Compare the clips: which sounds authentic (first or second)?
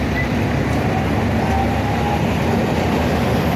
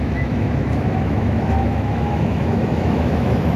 first